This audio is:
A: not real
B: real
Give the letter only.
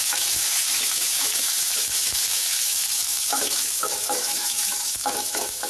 A